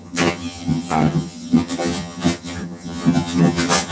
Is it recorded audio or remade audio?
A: remade